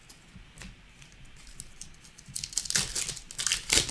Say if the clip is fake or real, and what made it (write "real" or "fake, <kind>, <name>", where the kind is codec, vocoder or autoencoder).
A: real